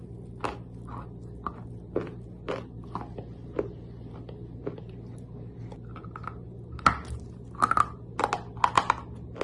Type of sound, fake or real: real